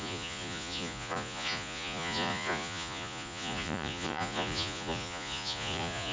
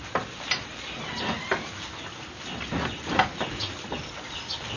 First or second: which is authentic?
second